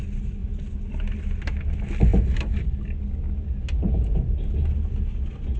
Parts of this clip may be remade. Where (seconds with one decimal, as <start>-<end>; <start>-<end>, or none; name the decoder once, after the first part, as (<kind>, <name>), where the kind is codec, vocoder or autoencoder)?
none